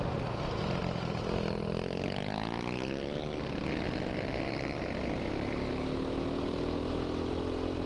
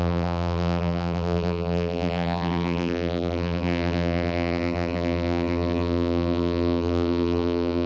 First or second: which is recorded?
first